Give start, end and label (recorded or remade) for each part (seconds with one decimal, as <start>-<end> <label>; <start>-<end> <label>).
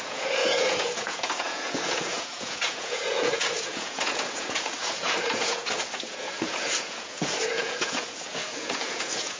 0.0-9.4 remade